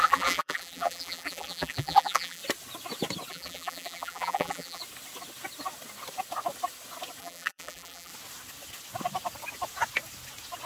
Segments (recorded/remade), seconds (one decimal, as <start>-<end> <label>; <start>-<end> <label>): 0.0-2.4 remade; 2.4-3.3 recorded; 3.3-4.8 remade; 4.8-7.2 recorded; 7.2-8.1 remade; 8.1-10.7 recorded